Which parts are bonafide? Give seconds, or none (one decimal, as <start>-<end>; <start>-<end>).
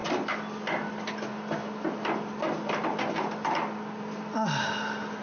0.0-5.2